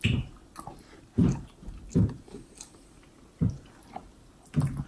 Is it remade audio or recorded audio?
recorded